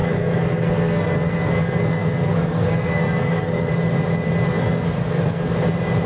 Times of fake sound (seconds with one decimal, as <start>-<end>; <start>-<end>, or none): 0.0-3.7; 4.5-5.5